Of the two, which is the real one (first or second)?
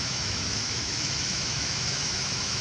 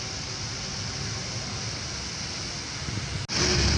second